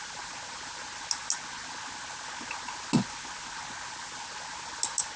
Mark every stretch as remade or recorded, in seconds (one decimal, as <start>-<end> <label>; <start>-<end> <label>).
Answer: 0.0-5.2 recorded